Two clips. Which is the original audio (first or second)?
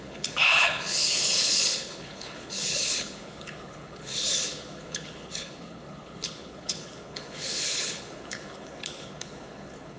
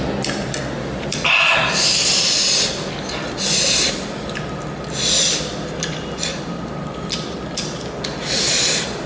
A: second